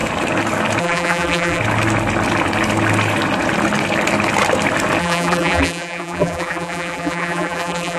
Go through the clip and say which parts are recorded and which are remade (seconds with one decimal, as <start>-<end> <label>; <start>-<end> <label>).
0.0-0.8 recorded; 0.8-1.6 remade; 1.6-5.0 recorded; 5.0-8.0 remade